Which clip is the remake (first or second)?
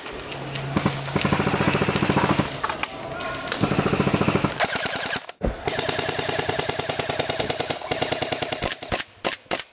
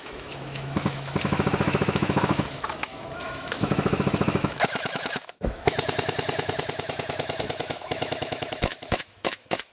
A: second